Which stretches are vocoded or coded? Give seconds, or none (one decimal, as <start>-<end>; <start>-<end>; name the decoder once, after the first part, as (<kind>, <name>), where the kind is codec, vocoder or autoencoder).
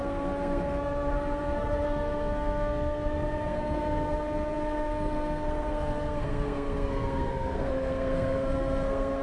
0.0-9.2 (codec, SNAC)